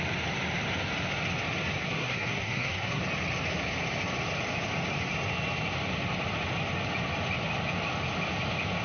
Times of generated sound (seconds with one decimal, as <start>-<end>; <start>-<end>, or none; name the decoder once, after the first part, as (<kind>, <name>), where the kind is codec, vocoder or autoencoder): 1.8-3.0 (codec, SNAC)